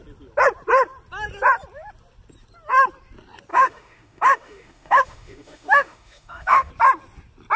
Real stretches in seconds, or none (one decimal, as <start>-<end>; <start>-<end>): 0.0-3.5; 6.7-7.6